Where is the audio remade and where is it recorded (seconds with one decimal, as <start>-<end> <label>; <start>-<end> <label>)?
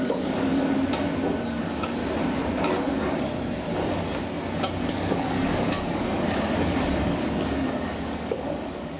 0.0-0.5 remade; 0.5-1.4 recorded; 1.4-2.0 remade; 2.0-2.6 recorded; 2.6-3.7 remade; 3.7-4.9 recorded; 4.9-9.0 remade